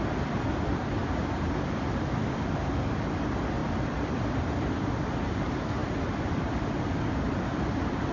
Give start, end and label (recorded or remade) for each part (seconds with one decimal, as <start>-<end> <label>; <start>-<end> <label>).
0.0-8.1 recorded